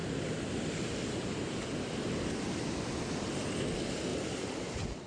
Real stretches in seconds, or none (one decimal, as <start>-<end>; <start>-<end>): 0.0-4.1

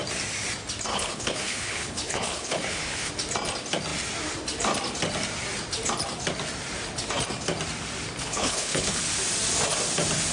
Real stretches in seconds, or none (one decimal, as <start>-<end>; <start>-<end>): 0.0-0.9; 3.1-8.2; 9.0-10.3

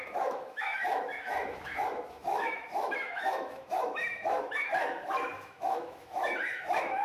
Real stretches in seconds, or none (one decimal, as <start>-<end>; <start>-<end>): none

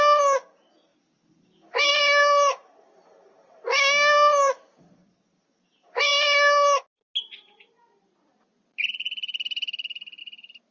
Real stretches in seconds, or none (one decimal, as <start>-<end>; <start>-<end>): 0.0-10.7

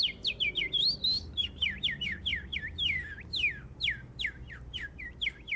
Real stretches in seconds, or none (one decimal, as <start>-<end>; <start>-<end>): 0.0-5.6

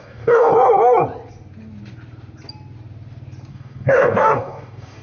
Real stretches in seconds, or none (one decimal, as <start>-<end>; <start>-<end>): 0.5-3.5